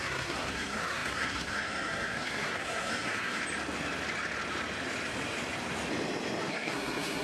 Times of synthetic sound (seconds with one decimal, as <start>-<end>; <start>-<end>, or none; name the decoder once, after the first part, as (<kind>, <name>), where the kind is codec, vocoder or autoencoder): 0.0-3.4 (codec, SNAC); 6.5-7.2